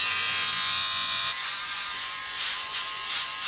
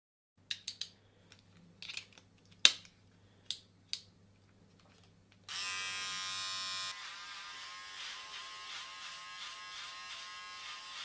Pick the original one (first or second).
second